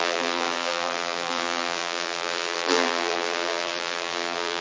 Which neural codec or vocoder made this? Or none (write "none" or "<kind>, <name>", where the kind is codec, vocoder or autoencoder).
vocoder, BigVGAN v2